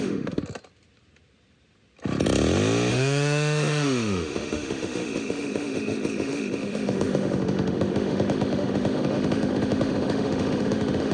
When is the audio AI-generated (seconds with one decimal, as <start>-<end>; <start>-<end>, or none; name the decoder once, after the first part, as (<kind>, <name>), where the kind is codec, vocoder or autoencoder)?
0.0-0.4 (autoencoder, DAC-VAE); 2.9-11.1

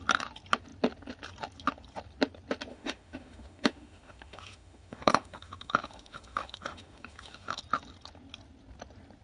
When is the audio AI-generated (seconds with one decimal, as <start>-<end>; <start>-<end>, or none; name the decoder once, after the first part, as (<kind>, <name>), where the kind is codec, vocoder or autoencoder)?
2.7-7.6 (autoencoder, DAC-VAE)

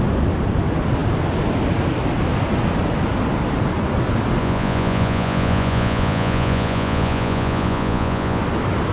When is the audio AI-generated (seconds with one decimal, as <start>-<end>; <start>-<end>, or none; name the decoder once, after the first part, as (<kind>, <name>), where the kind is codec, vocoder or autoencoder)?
4.4-8.4 (vocoder, Vocos)